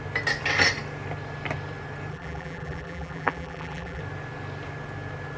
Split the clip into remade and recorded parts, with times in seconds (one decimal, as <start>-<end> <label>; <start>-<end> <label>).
0.0-2.1 recorded; 2.1-4.0 remade; 4.0-5.4 recorded